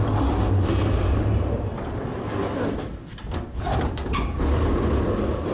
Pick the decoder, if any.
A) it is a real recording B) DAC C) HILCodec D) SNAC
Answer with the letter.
A